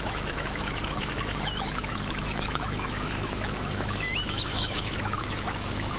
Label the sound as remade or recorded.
remade